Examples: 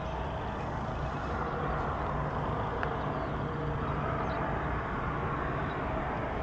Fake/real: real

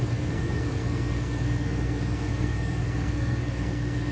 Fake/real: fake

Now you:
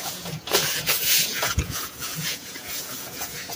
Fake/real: fake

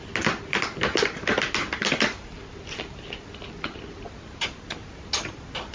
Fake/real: real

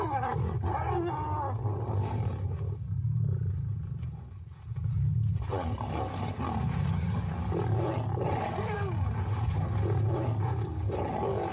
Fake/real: real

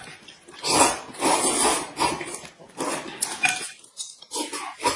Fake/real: real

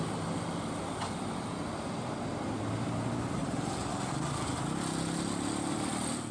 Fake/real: real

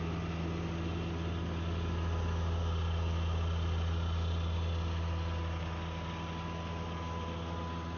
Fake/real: real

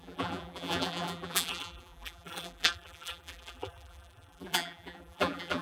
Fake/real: fake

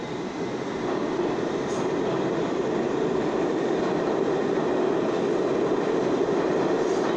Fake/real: real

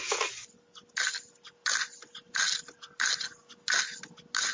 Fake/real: real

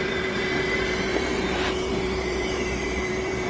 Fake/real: fake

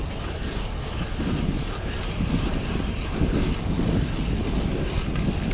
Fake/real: real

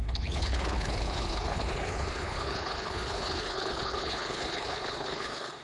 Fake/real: fake